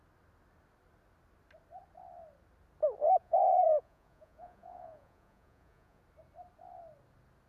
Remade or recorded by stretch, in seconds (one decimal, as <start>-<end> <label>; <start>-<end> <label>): 0.0-3.2 recorded; 3.2-6.0 remade; 6.0-7.5 recorded